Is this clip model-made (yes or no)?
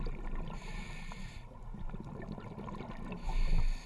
no